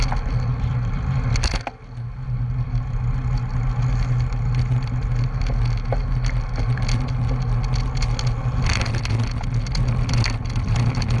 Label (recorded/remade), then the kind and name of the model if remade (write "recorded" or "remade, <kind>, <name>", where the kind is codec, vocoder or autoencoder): recorded